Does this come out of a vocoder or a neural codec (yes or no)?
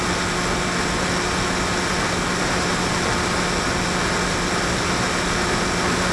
no